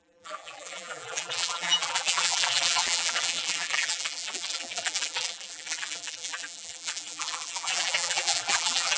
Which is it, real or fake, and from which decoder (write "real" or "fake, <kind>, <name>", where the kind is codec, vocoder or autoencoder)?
fake, vocoder, BigVGAN v2